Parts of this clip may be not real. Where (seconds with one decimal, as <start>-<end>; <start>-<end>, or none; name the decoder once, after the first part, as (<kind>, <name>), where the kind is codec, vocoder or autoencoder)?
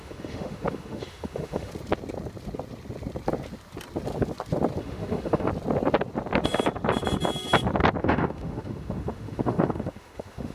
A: 0.0-1.7 (autoencoder, DAC-VAE); 4.8-5.5; 8.0-10.5